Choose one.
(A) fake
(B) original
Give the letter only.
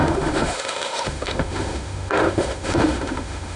A